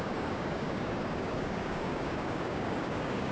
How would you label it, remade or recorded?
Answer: remade